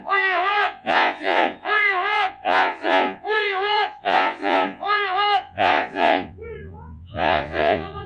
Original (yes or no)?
no